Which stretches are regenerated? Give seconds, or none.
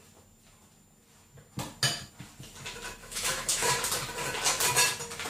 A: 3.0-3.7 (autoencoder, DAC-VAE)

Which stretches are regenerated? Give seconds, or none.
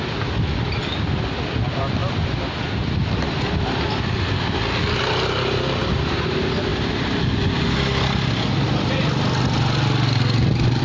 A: none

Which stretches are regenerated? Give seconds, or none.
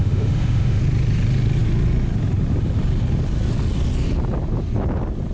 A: 0.0-0.8 (autoencoder, DAC-VAE)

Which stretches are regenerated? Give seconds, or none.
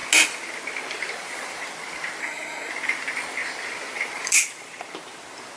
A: 2.2-2.7 (codec, SNAC)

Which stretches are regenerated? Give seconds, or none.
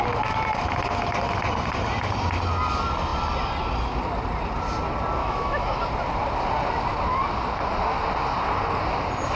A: 5.2-5.8 (autoencoder, DAC-VAE)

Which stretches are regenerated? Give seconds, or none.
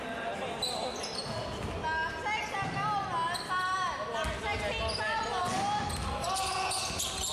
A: none